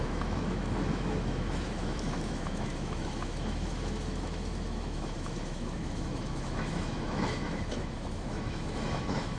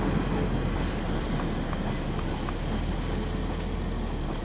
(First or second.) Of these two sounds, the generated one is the first